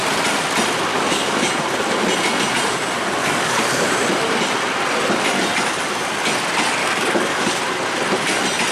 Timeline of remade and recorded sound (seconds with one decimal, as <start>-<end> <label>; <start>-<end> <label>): 0.0-0.9 recorded; 0.9-1.5 remade; 1.5-3.2 recorded; 3.2-3.9 remade; 3.9-6.8 recorded; 6.8-7.6 remade; 7.6-8.7 recorded